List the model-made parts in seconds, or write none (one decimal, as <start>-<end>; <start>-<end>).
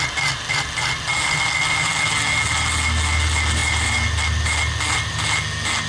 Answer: none